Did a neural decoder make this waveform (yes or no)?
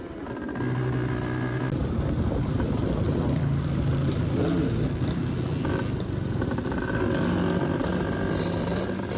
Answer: no